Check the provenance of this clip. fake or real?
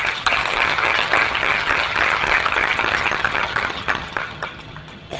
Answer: fake